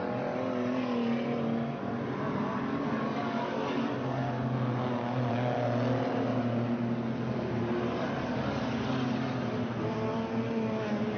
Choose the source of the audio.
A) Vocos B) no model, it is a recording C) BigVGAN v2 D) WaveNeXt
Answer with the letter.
B